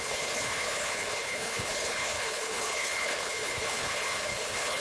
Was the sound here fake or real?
fake